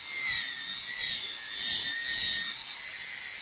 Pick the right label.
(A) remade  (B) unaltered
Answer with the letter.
B